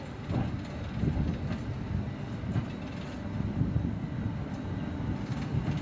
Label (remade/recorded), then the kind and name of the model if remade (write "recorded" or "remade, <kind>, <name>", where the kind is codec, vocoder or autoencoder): recorded